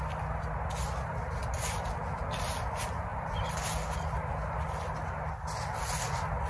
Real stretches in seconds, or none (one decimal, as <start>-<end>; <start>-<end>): 0.0-6.5